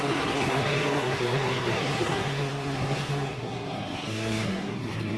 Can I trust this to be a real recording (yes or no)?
no